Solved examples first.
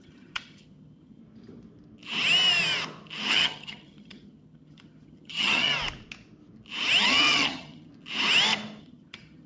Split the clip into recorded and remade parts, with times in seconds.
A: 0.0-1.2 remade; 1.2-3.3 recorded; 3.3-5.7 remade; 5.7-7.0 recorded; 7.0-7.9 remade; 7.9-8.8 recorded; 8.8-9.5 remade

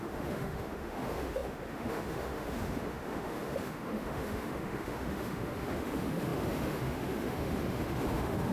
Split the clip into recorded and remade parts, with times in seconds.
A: 0.0-8.5 remade

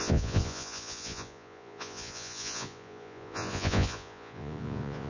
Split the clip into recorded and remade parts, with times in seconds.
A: 0.0-5.1 remade

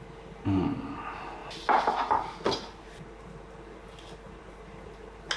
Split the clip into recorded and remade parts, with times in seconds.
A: 0.0-5.4 recorded

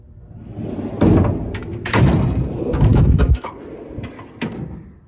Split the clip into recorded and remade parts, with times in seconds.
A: 0.0-2.9 recorded; 2.9-3.5 remade; 3.5-5.1 recorded

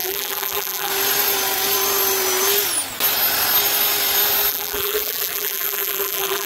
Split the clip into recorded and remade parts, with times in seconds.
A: 0.0-0.9 remade; 0.9-4.5 recorded; 4.5-6.5 remade